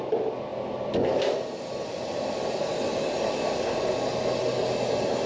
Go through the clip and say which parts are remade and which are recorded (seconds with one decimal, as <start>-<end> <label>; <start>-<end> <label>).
0.0-5.3 recorded